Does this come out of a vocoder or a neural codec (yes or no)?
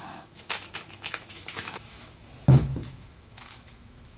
yes